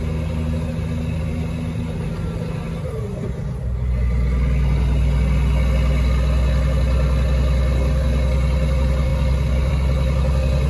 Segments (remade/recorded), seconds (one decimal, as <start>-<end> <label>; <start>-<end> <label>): 0.0-10.7 recorded